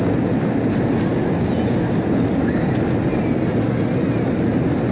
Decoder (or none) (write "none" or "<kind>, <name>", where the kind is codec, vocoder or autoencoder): none